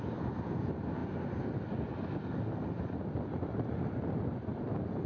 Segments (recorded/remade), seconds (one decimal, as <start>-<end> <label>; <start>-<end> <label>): 0.0-5.1 recorded